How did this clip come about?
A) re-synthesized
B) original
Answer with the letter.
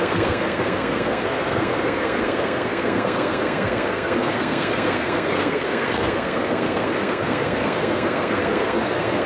A